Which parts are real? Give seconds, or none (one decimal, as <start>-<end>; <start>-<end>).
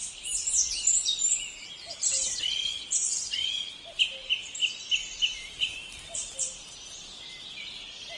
3.5-4.6; 6.6-8.2